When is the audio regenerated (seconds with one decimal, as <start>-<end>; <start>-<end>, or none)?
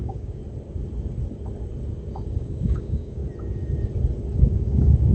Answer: 0.0-0.4; 2.3-3.2; 4.4-5.1